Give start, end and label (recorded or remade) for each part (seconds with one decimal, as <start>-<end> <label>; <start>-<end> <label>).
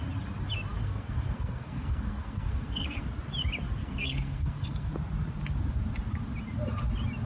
0.0-0.8 recorded; 0.8-3.1 remade; 3.1-3.8 recorded; 3.8-4.9 remade; 4.9-7.3 recorded